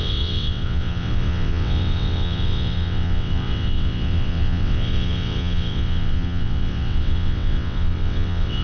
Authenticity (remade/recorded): remade